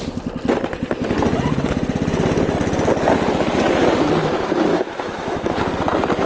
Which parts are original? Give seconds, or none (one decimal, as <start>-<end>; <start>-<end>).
0.0-4.7; 5.6-6.3